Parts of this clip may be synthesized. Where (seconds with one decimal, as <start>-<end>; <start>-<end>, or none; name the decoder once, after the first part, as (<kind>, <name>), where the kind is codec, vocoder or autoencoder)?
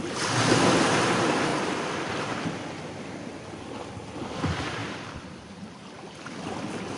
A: 1.5-2.1 (vocoder, BigVGAN v2); 4.8-6.6